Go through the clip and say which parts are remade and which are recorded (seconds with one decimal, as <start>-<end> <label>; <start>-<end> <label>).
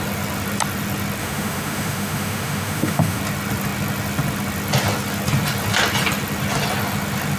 0.0-1.2 recorded; 1.2-3.2 remade; 3.2-7.4 recorded